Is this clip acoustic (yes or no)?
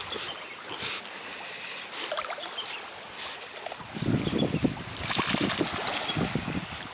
yes